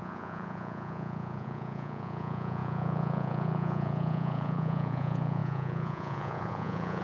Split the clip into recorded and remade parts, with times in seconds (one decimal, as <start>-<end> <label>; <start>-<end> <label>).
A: 0.0-7.0 remade